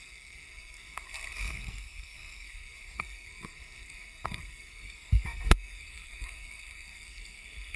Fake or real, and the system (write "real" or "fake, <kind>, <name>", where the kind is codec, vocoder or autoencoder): fake, codec, SNAC